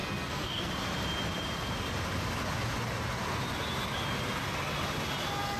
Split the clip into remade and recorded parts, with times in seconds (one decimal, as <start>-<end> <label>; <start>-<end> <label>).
0.0-0.7 remade; 0.7-5.6 recorded